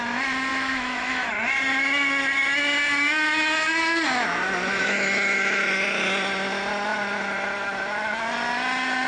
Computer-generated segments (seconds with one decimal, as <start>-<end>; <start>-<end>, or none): 0.5-1.3; 4.8-5.6